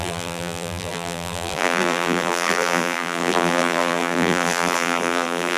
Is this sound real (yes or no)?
no